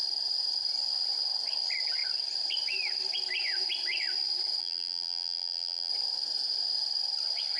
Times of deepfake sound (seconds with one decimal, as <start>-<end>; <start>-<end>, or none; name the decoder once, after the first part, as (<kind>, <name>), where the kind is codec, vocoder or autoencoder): 4.6-5.9 (vocoder, BigVGAN v2)